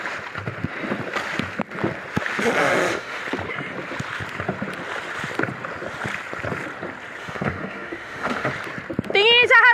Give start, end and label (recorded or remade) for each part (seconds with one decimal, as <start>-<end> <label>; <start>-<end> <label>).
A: 0.0-2.6 recorded; 2.6-3.2 remade; 3.2-7.2 recorded; 7.2-8.5 remade; 8.5-9.7 recorded